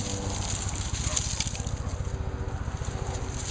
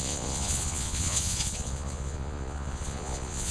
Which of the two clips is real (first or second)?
first